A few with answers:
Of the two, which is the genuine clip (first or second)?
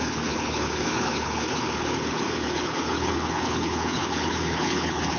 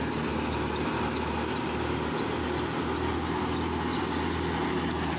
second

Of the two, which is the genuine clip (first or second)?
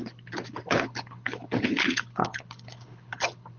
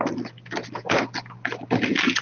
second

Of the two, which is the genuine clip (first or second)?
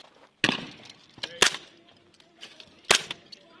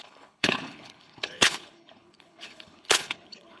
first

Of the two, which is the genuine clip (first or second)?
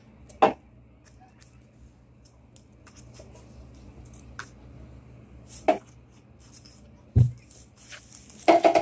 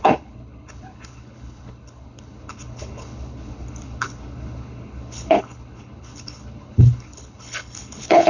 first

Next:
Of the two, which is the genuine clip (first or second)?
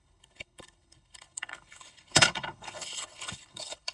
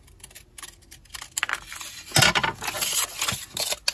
second